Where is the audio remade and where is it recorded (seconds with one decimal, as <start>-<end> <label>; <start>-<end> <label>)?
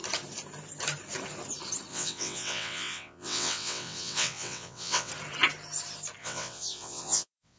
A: 0.0-1.9 recorded; 1.9-5.1 remade; 5.1-6.2 recorded; 6.2-7.6 remade